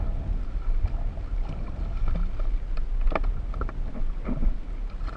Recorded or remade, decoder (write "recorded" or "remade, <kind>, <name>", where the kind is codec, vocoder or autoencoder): recorded